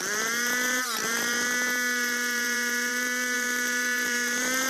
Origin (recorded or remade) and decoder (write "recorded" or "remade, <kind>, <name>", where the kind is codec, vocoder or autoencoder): remade, vocoder, BigVGAN v2